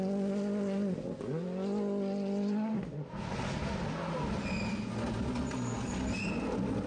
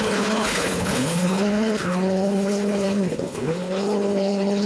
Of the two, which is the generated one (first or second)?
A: second